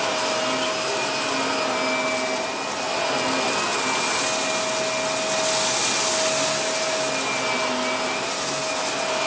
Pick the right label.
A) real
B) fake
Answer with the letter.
A